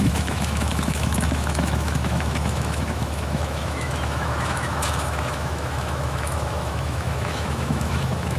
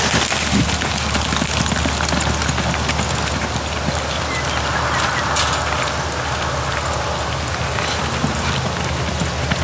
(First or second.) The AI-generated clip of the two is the first